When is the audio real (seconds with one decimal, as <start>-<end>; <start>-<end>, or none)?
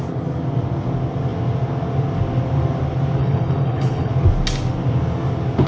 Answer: 0.0-3.2; 4.1-5.7